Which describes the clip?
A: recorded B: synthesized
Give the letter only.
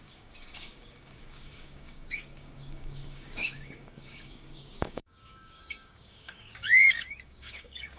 B